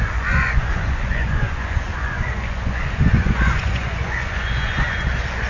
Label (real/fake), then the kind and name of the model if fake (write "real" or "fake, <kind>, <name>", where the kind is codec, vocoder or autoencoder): fake, vocoder, Vocos